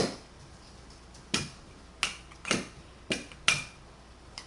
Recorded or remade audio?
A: recorded